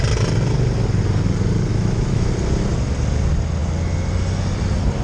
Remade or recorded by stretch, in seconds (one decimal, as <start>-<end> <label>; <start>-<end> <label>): 0.0-1.7 recorded; 1.7-2.3 remade; 2.3-5.0 recorded